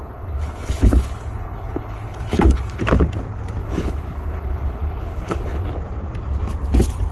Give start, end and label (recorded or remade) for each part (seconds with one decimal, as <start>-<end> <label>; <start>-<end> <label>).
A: 0.0-2.8 remade; 2.8-3.6 recorded; 3.6-5.7 remade; 5.7-7.1 recorded